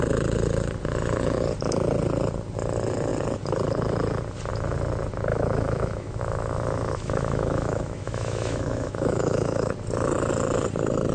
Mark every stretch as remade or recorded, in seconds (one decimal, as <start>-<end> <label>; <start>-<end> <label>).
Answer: 0.0-5.3 recorded; 5.3-9.7 remade; 9.7-11.1 recorded